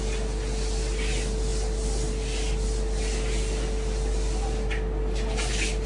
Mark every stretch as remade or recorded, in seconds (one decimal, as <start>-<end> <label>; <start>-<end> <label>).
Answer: 0.0-5.9 recorded